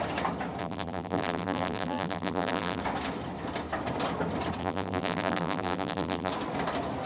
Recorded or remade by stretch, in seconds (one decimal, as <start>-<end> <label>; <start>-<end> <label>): 0.0-0.6 recorded; 0.6-2.8 remade; 2.8-4.6 recorded; 4.6-6.3 remade; 6.3-7.1 recorded